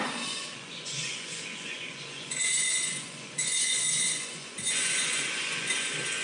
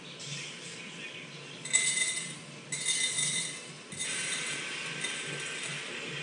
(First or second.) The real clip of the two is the second